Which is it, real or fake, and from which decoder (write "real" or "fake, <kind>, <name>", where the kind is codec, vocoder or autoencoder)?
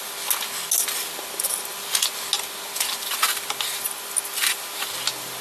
real